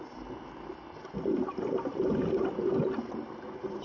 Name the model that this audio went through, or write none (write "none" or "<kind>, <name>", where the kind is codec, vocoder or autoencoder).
none